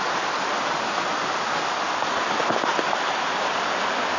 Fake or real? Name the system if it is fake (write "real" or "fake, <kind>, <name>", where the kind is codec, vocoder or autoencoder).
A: real